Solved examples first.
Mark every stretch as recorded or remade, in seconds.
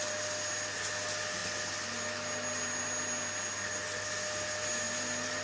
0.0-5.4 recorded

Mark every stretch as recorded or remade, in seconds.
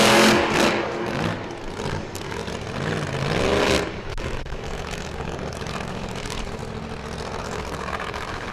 0.0-1.3 remade; 1.3-2.0 recorded; 2.0-2.4 remade; 2.4-3.6 recorded; 3.6-6.6 remade; 6.6-7.4 recorded; 7.4-8.5 remade